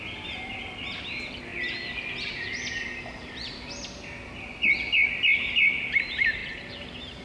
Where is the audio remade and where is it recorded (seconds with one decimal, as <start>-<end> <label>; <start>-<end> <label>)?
0.0-7.2 recorded